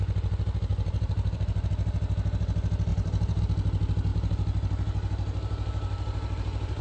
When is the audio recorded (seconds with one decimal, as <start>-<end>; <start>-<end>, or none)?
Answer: 0.0-0.7; 1.7-2.9; 3.4-4.1